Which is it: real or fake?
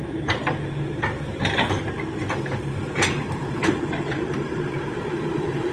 fake